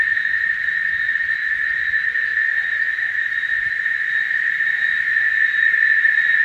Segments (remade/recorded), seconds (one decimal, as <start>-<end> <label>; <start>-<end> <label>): 0.0-1.2 recorded; 1.2-1.8 remade; 1.8-2.3 recorded; 2.3-6.4 remade